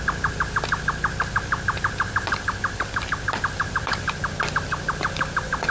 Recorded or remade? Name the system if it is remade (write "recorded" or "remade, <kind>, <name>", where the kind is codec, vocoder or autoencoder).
recorded